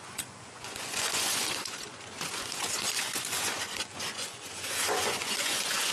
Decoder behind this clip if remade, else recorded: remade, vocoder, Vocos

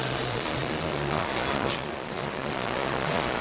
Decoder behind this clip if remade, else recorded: remade, vocoder, Vocos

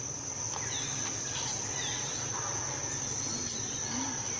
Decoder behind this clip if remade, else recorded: recorded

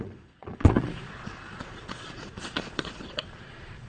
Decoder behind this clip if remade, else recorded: remade, vocoder, Vocos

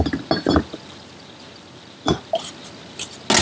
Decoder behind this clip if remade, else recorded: recorded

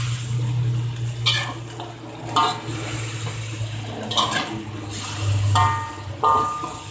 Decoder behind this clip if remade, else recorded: recorded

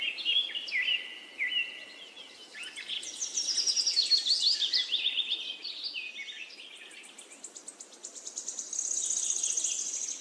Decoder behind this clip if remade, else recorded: recorded